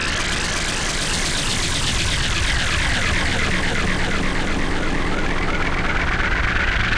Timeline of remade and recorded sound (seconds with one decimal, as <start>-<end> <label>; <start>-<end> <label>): 0.0-7.0 recorded